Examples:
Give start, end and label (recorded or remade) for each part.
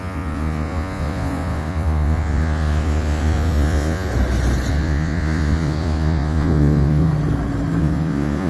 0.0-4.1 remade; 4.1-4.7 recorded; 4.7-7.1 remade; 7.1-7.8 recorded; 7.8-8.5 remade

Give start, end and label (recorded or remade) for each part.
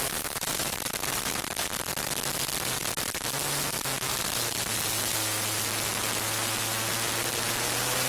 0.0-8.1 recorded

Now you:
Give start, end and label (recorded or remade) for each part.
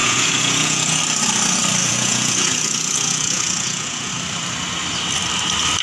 0.0-1.0 remade; 1.0-1.8 recorded; 1.8-4.1 remade; 4.1-5.8 recorded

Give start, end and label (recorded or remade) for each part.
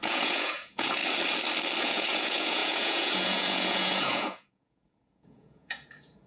0.0-1.0 remade; 1.0-1.8 recorded; 1.8-6.3 remade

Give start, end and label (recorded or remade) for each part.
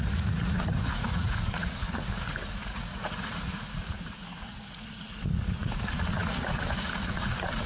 0.0-7.7 remade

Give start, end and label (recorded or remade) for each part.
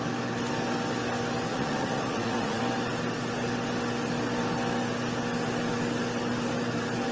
0.0-1.5 recorded; 1.5-2.6 remade; 2.6-7.1 recorded